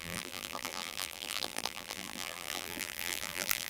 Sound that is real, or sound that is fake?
fake